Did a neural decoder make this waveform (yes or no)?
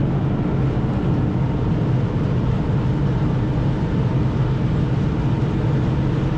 no